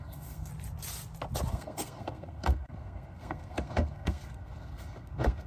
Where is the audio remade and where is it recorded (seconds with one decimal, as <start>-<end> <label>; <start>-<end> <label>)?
0.0-0.5 remade; 0.5-1.5 recorded; 1.5-5.5 remade